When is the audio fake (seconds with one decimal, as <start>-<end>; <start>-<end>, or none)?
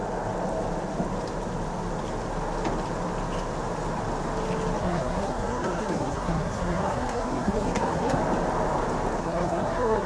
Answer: 4.8-8.2; 9.2-10.1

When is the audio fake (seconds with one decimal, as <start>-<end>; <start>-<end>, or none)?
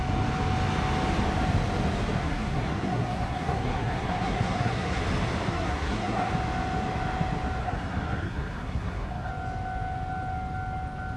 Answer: 2.2-5.0; 5.5-6.3; 7.6-9.3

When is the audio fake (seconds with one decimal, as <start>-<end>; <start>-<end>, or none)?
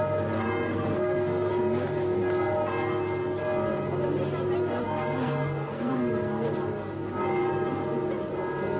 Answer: 0.7-1.5; 4.8-6.5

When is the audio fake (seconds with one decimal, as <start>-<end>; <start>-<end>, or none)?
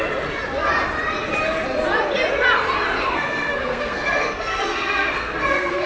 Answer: 3.0-5.9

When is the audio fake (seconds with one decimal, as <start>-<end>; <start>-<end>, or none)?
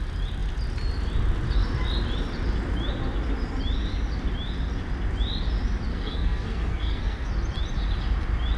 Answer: 5.9-7.3